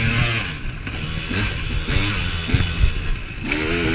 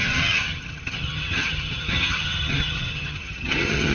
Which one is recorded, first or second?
first